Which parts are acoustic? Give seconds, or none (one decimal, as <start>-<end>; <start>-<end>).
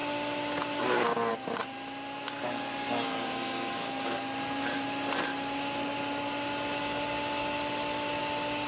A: 0.0-8.7